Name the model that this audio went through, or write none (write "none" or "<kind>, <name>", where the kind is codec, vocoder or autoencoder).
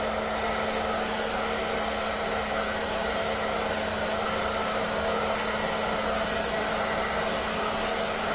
none